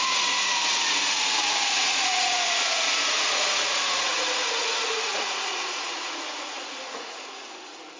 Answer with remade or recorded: remade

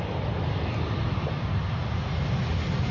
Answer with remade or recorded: recorded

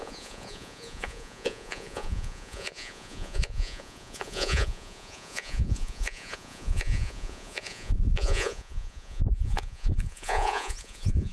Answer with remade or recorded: remade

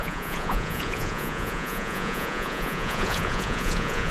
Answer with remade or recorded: remade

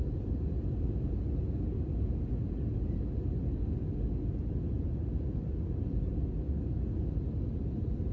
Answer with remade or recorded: recorded